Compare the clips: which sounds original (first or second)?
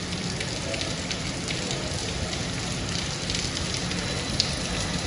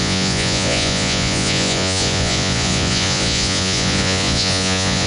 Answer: first